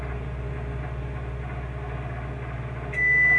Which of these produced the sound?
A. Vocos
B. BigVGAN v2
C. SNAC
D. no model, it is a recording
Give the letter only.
D